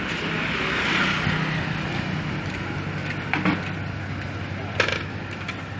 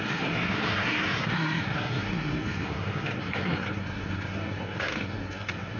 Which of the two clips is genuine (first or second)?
first